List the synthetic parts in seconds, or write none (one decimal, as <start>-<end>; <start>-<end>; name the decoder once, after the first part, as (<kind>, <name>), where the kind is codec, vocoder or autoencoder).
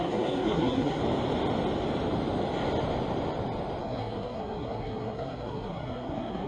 0.0-1.0 (codec, SNAC); 3.8-6.5